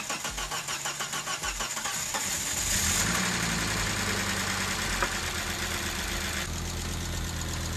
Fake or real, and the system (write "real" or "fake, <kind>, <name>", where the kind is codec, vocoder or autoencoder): real